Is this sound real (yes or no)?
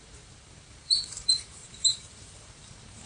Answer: no